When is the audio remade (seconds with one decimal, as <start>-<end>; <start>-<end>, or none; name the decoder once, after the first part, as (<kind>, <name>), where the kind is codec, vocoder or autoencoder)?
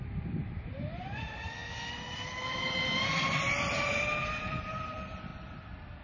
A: 0.0-1.6 (vocoder, BigVGAN v2); 4.5-5.3